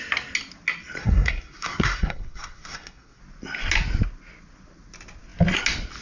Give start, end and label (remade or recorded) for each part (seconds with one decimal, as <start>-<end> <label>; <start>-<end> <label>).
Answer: 0.0-1.0 recorded; 1.0-3.2 remade; 3.2-6.0 recorded